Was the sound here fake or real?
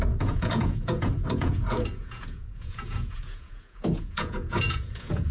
fake